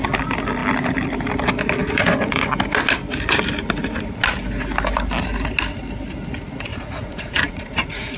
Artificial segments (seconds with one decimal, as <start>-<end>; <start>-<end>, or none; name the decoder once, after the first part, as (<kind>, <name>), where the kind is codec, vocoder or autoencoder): 1.8-2.5 (vocoder, Vocos); 6.7-8.2